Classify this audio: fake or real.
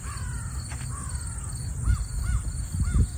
real